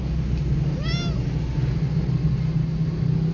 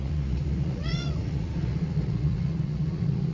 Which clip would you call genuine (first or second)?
first